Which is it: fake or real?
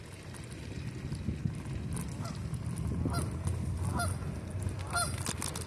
real